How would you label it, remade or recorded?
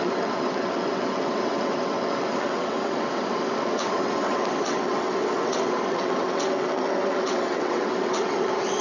remade